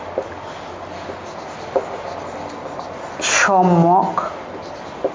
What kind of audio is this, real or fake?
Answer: real